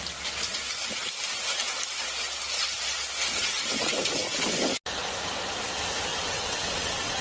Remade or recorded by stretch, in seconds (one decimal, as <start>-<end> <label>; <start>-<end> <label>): 0.0-6.1 recorded; 6.1-7.2 remade